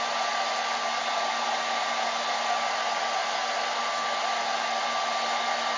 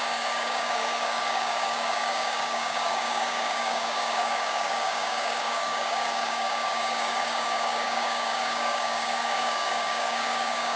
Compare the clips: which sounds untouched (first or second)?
first